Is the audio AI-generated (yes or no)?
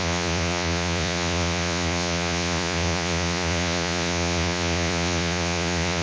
yes